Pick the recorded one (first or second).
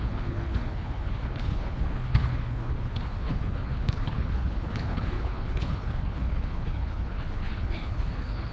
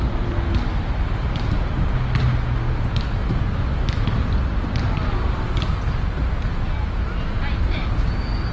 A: second